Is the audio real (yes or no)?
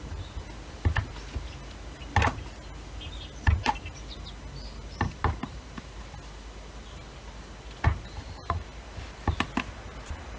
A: yes